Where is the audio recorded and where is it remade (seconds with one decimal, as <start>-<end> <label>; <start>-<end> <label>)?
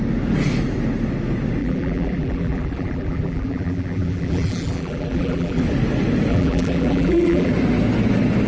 0.0-1.6 recorded; 1.6-5.6 remade; 5.6-6.3 recorded; 6.3-7.5 remade; 7.5-8.5 recorded